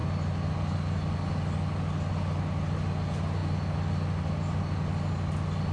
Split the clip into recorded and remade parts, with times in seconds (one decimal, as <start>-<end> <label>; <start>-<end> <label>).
0.0-5.7 recorded